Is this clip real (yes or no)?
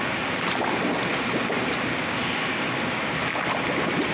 yes